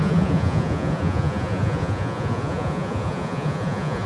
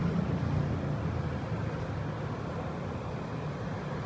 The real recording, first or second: second